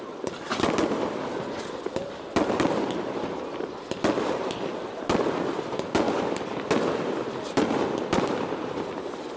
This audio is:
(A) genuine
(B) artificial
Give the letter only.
A